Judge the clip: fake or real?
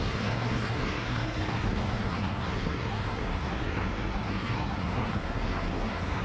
fake